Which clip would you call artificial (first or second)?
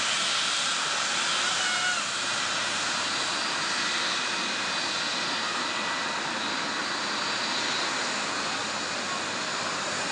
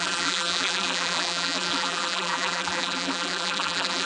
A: second